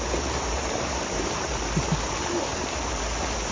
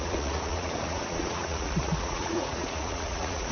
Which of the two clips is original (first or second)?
first